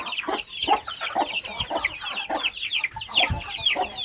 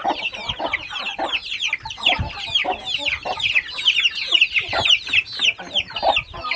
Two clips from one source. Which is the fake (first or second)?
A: second